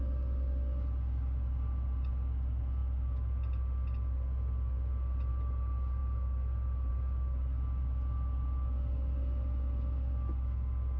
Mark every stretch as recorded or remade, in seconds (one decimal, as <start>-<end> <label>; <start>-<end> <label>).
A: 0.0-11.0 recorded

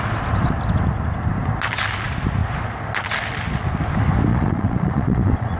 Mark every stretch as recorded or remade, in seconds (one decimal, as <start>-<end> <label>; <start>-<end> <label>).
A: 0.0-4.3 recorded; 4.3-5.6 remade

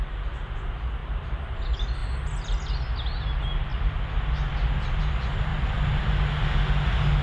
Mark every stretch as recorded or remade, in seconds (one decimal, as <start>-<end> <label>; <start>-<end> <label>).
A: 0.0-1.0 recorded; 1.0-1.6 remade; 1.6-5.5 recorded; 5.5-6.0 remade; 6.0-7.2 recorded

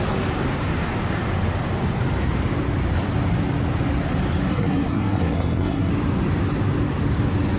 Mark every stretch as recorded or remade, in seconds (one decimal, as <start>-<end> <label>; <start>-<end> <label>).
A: 0.0-4.5 recorded; 4.5-5.9 remade; 5.9-7.6 recorded